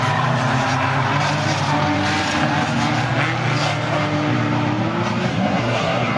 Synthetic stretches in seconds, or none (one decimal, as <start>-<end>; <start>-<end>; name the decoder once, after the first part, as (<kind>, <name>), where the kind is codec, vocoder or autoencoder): 5.3-6.2 (codec, SNAC)